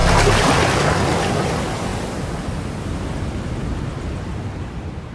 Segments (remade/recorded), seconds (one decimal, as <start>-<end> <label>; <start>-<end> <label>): 0.0-5.1 recorded